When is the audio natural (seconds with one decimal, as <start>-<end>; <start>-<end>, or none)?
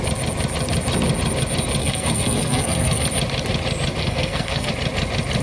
0.0-1.8; 3.0-4.0; 4.7-5.4